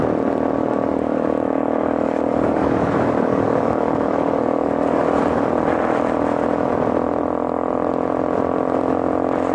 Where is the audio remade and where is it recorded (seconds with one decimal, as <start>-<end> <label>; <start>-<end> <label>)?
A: 0.0-0.6 recorded; 0.6-5.4 remade; 5.4-9.5 recorded